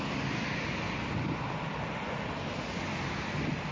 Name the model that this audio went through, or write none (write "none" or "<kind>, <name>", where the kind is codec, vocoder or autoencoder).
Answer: none